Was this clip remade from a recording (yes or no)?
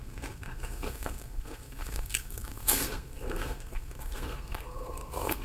yes